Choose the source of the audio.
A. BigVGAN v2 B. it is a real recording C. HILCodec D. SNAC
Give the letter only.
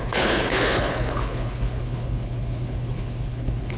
C